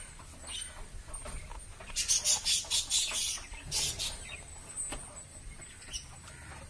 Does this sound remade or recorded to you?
recorded